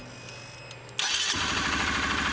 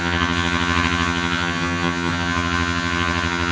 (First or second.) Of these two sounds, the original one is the first